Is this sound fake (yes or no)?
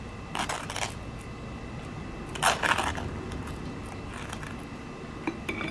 no